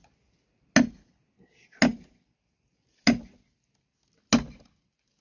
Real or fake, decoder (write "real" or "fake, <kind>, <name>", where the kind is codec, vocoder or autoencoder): real